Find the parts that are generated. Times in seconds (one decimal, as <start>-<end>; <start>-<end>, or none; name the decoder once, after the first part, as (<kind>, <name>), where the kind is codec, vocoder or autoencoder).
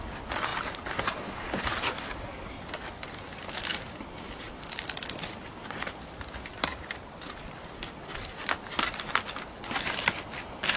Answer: 3.7-5.4 (vocoder, BigVGAN v2); 6.7-7.4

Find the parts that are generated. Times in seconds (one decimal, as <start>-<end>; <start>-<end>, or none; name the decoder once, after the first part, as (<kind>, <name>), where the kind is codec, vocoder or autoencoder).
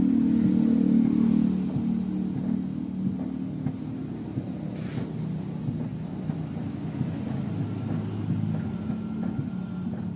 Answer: none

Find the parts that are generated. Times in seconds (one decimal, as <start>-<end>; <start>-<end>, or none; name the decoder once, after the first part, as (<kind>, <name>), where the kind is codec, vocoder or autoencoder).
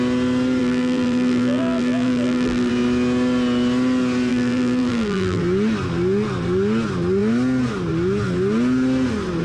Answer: 0.6-2.7 (vocoder, BigVGAN v2); 4.3-5.4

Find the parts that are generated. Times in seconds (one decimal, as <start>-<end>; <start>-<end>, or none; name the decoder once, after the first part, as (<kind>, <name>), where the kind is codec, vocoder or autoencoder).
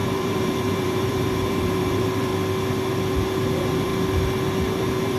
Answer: 0.0-2.3 (vocoder, BigVGAN v2); 3.5-3.9; 4.8-5.2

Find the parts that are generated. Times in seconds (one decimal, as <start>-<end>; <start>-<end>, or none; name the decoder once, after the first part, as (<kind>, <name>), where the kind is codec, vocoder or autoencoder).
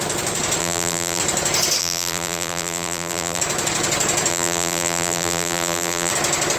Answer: 0.6-1.2 (vocoder, BigVGAN v2); 1.8-3.4; 4.3-6.1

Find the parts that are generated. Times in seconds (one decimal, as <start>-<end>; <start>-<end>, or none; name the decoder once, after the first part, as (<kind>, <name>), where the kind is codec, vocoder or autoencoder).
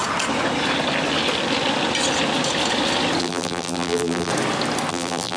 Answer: 3.2-4.3 (vocoder, BigVGAN v2); 4.9-5.4